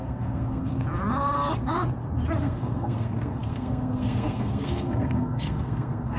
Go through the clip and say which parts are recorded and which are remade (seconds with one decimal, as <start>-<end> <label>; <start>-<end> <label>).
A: 0.0-0.7 remade; 0.7-2.4 recorded; 2.4-6.2 remade